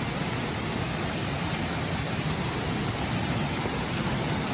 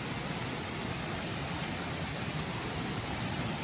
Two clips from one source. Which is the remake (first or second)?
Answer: second